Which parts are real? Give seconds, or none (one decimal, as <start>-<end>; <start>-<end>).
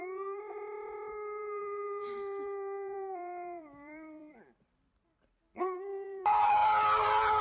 6.6-7.4